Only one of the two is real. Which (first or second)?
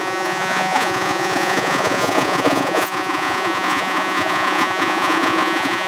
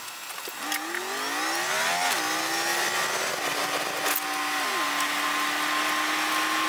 second